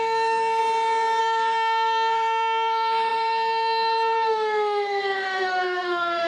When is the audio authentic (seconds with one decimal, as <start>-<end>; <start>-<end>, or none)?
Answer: 0.6-1.2